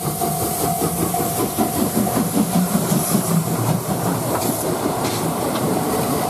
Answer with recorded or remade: remade